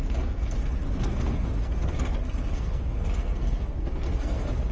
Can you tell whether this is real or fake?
fake